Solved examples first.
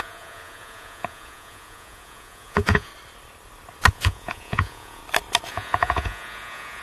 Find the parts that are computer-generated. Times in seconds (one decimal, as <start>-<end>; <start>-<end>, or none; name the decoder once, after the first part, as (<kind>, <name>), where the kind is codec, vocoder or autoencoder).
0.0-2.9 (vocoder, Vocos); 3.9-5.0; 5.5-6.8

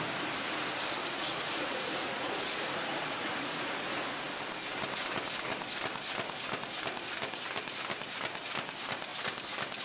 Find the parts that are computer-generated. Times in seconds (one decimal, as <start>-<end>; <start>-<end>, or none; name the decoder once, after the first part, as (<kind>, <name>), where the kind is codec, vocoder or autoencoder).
1.0-4.3 (vocoder, Vocos)

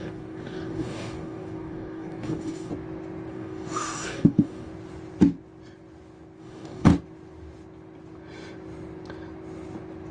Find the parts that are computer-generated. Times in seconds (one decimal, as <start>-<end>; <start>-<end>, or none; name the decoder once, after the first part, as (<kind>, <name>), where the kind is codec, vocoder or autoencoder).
0.0-2.7 (codec, DAC); 3.3-4.7; 6.4-6.9

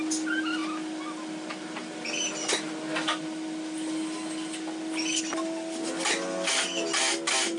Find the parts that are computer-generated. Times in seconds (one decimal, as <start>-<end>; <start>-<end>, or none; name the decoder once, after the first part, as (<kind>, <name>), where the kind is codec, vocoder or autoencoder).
none